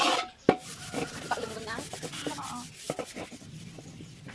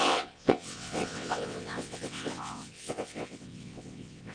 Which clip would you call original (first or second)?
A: first